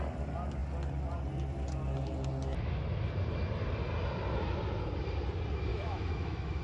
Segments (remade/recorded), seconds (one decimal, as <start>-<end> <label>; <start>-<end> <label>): 0.0-5.7 recorded; 5.7-6.6 remade